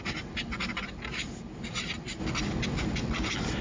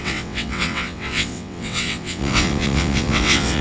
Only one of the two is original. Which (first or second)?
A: first